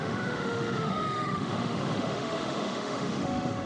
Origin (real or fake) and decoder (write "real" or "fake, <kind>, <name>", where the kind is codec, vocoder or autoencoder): fake, autoencoder, DAC-VAE